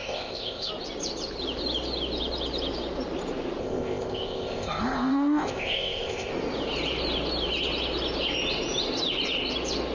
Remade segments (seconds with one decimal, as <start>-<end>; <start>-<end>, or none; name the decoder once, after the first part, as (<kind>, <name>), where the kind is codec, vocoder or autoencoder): 0.0-0.7 (codec, ZipCodec); 3.6-6.3